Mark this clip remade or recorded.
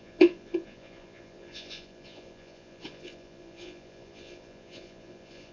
remade